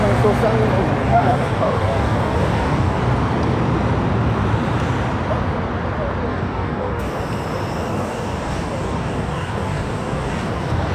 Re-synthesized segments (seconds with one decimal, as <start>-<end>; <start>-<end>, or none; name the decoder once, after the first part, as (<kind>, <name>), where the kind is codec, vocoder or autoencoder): 1.0-3.0 (codec, DAC); 6.3-7.2; 7.9-10.9